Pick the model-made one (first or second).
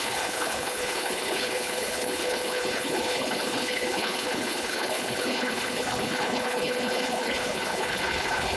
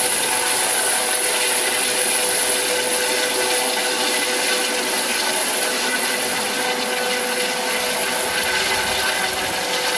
first